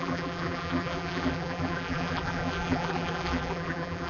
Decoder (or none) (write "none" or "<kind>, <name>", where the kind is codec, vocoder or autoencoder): vocoder, BigVGAN v2